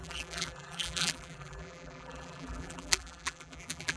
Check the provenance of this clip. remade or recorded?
remade